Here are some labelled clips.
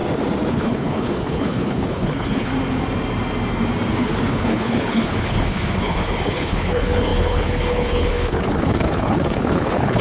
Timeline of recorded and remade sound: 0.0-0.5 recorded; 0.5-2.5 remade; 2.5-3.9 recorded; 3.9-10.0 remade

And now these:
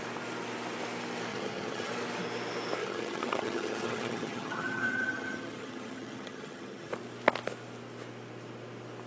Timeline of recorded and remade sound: 0.0-1.3 recorded; 1.3-1.9 remade; 1.9-2.8 recorded; 2.8-6.9 remade; 6.9-9.1 recorded

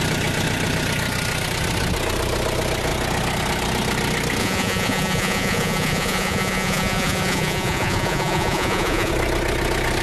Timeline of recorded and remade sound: 0.0-4.4 recorded; 4.4-9.1 remade; 9.1-10.0 recorded